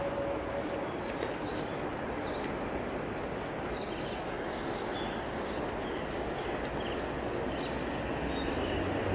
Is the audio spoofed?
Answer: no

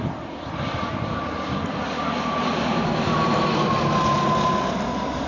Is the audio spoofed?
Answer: no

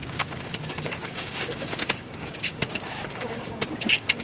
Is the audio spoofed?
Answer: yes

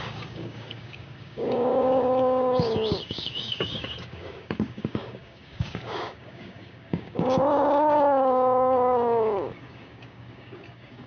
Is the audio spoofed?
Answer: yes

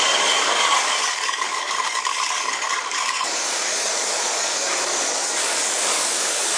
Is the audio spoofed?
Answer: yes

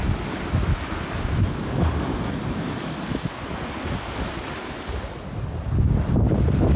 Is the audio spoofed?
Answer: no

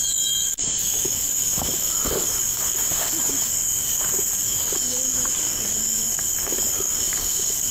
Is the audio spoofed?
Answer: yes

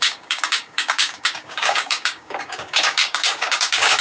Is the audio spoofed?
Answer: yes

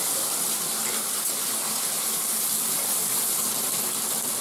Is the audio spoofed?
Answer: no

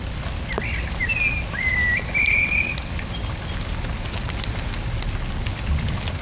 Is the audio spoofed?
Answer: no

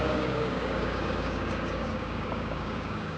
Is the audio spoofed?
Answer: yes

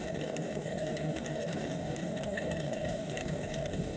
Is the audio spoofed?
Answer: yes